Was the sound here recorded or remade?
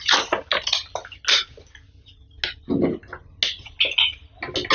recorded